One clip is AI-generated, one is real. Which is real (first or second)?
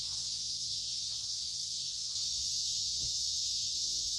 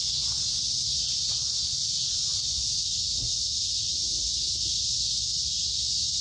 second